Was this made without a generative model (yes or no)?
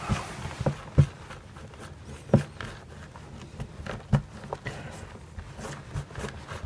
yes